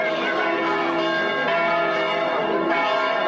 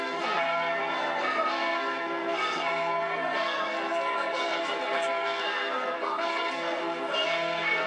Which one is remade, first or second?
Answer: second